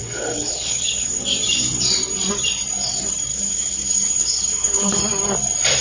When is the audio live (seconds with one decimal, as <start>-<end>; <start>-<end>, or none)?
1.2-3.3; 5.0-5.8